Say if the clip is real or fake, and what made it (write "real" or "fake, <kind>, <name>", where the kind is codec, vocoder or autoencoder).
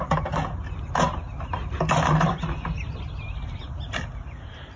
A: real